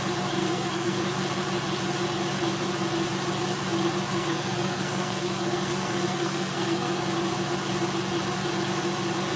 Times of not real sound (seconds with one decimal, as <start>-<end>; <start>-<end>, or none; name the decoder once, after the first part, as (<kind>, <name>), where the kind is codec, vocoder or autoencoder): 0.4-1.0 (codec, SNAC); 4.1-7.0

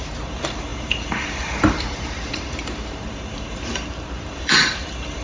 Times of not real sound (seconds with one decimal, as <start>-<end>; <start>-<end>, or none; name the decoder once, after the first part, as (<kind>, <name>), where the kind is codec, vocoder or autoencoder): 0.0-5.2 (vocoder, BigVGAN v2)

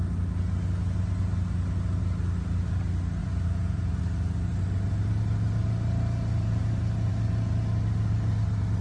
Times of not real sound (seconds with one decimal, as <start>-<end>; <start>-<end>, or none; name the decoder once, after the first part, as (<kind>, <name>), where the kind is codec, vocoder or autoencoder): 3.2-4.0 (vocoder, Vocos)

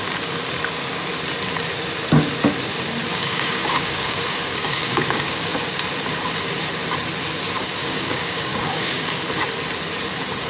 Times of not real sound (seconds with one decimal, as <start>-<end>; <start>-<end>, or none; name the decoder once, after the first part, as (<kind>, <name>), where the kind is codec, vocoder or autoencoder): 3.1-5.6 (codec, DAC); 7.8-9.1

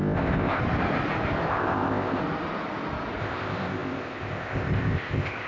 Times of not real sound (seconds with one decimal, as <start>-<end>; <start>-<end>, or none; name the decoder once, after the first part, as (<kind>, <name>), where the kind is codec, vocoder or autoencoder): 0.0-0.6 (codec, ZipCodec); 1.5-2.2; 3.2-5.5

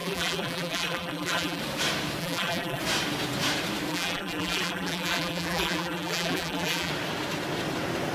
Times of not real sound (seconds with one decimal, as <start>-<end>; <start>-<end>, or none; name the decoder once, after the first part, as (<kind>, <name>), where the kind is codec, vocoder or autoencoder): 0.0-1.6 (vocoder, BigVGAN v2); 2.2-2.8; 3.9-6.9